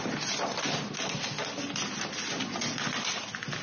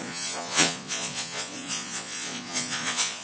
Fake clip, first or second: second